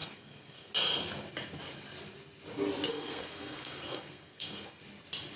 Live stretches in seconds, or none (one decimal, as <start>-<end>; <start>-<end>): 0.7-2.9; 4.8-5.4